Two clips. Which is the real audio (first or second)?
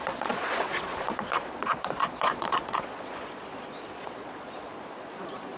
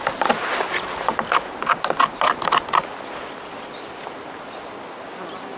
second